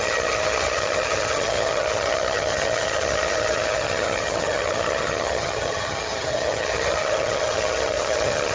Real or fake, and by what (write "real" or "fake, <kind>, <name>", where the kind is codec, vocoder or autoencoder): fake, vocoder, HiFi-GAN